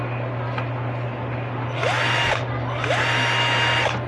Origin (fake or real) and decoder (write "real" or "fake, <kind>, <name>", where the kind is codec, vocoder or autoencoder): real